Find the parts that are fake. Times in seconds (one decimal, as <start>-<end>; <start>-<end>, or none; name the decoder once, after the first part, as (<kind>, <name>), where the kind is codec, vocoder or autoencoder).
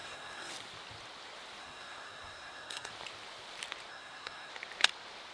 0.0-0.5 (codec, SNAC); 1.6-2.9; 3.9-4.5